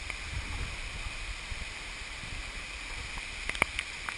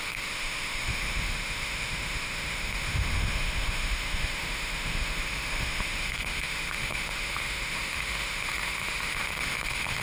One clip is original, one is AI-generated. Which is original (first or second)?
first